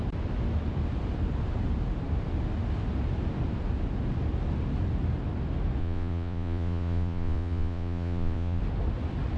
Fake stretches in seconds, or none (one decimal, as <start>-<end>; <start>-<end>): 5.8-8.6